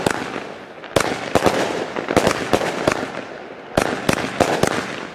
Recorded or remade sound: recorded